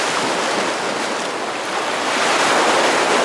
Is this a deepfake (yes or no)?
no